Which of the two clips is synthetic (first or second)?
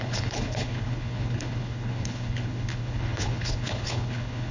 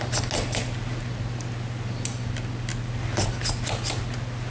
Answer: first